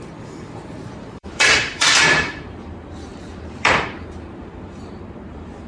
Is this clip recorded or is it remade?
remade